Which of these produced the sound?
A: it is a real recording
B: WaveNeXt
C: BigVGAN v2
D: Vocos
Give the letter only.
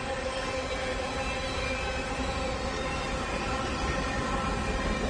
A